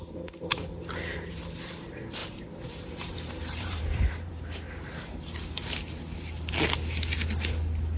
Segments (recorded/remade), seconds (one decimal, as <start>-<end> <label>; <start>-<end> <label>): 0.0-2.2 recorded; 2.2-4.3 remade; 4.3-8.0 recorded